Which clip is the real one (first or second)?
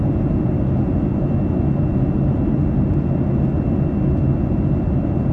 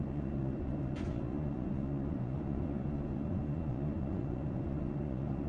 first